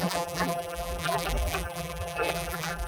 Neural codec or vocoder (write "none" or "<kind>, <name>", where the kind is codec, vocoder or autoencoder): vocoder, BigVGAN v2